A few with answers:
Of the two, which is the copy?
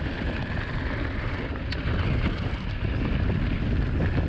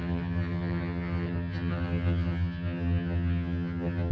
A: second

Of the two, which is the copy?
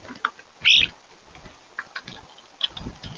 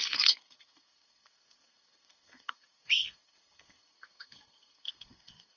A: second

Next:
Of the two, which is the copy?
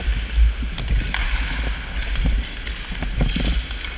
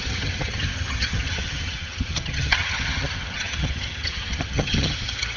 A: second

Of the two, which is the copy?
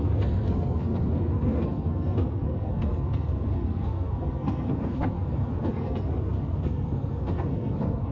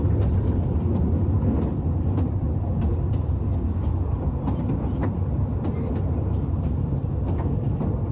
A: first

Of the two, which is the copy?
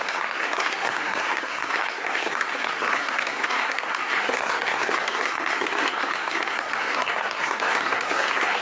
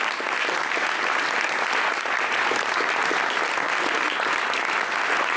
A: first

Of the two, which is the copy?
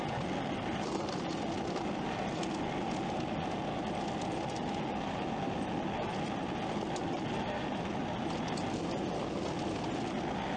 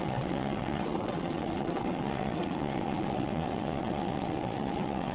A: second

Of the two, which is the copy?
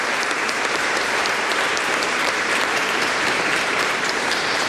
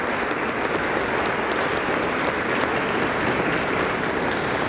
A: first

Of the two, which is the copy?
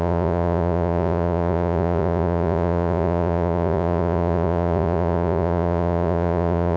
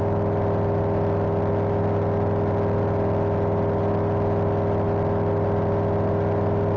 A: first